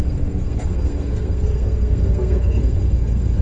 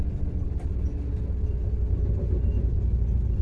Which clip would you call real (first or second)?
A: second